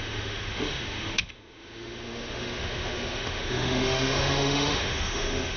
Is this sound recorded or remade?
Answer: remade